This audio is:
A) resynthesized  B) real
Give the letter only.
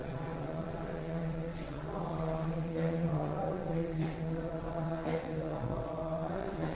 A